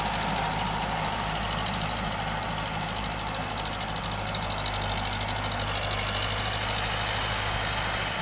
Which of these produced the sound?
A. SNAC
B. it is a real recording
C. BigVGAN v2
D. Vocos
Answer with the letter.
B